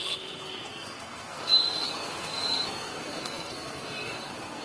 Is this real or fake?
fake